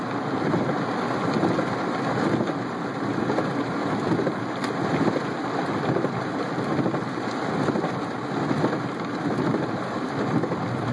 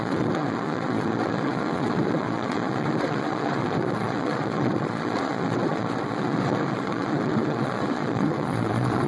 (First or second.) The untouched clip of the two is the first